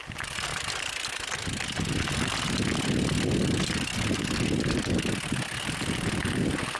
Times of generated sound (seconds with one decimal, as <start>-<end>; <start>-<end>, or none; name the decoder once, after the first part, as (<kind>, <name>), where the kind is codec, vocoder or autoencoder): none